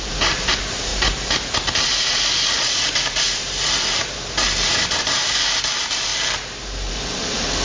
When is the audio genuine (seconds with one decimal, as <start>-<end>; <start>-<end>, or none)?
6.1-6.9